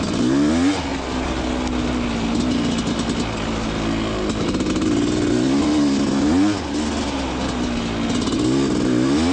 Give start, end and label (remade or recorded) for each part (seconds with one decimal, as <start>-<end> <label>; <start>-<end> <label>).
0.0-9.3 recorded